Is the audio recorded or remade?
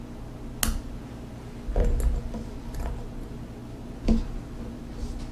recorded